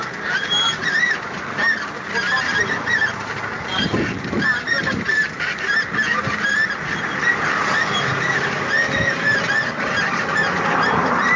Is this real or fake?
real